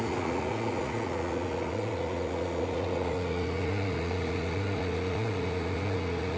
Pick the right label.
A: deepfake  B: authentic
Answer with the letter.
A